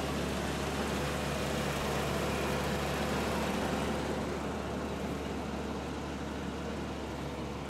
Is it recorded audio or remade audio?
recorded